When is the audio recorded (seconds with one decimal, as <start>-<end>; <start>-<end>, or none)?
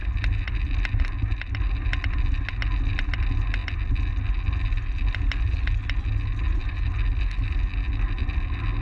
0.0-8.8